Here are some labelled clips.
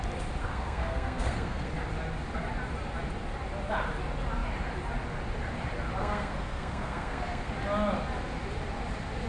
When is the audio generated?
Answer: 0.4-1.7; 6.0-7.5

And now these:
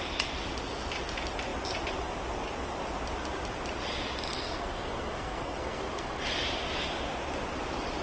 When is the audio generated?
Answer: 4.3-6.2

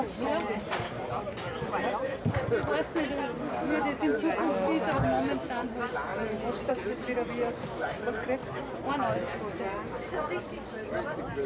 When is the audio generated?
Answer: none